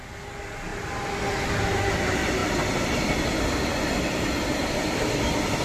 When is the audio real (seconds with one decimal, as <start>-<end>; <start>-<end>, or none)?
0.0-5.6